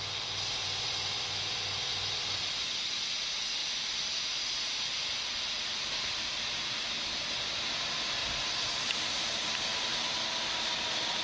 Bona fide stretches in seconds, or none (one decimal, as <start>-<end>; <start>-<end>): 0.0-11.2

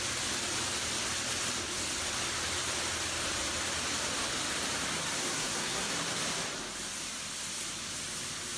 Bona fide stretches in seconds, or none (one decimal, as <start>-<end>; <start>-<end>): 0.0-5.2; 5.9-8.6